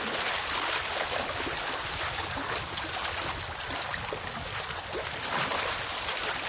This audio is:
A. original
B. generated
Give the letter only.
A